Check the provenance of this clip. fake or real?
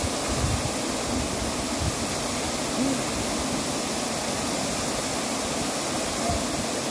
real